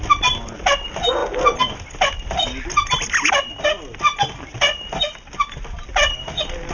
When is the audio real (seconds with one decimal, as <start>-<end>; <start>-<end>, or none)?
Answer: 0.0-6.7